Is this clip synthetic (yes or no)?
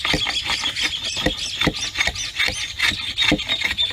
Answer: no